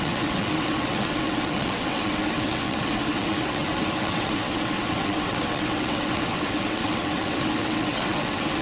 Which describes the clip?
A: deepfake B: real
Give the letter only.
A